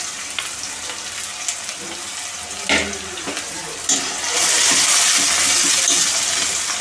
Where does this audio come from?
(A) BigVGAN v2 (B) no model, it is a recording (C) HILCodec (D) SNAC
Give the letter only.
B